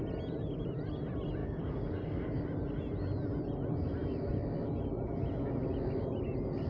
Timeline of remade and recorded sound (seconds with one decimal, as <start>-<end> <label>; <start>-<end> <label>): 0.0-1.4 recorded; 1.4-2.4 remade; 2.4-6.7 recorded